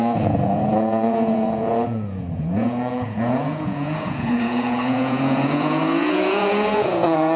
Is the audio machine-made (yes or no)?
yes